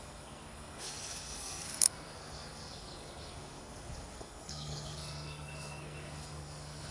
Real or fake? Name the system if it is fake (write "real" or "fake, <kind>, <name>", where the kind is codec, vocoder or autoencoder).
fake, codec, SNAC